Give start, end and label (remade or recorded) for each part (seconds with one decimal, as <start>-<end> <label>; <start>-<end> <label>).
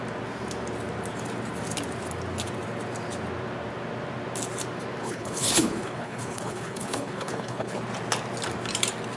0.0-5.0 recorded; 5.0-7.8 remade; 7.8-9.2 recorded